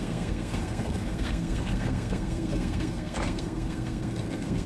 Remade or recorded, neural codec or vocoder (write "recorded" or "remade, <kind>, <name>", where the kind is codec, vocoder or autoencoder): remade, codec, SNAC